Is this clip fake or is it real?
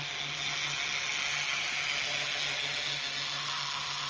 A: real